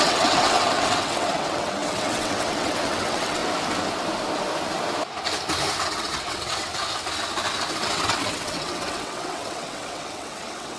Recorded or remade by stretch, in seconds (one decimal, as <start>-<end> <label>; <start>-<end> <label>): 0.0-3.4 remade; 3.4-5.9 recorded; 5.9-6.7 remade; 6.7-7.7 recorded; 7.7-10.8 remade